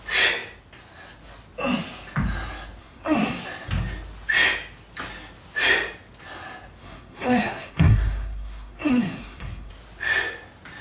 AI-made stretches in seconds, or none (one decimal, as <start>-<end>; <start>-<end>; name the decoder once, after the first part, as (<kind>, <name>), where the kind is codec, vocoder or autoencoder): 2.8-3.4 (codec, SNAC); 6.8-9.7